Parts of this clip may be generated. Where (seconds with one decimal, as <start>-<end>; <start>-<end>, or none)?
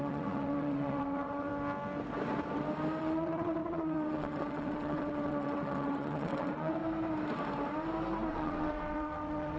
0.0-1.5; 3.0-6.8; 8.3-9.6